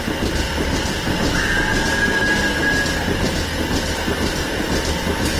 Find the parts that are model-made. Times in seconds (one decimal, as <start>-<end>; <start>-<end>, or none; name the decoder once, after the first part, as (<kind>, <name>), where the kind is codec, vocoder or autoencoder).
0.0-0.9 (vocoder, BigVGAN v2)